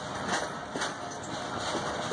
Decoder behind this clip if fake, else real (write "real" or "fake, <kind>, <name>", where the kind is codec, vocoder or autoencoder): real